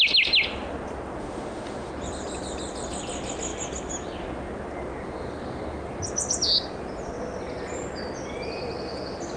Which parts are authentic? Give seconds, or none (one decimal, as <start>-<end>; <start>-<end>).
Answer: 0.0-1.2; 1.9-9.4